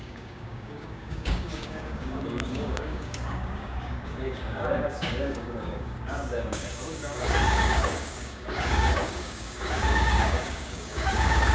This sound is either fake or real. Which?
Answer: fake